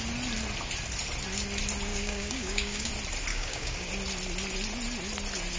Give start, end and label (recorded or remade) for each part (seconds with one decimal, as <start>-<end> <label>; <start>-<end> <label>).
0.0-1.9 recorded; 1.9-2.9 remade; 2.9-3.3 recorded; 3.3-3.9 remade; 3.9-5.6 recorded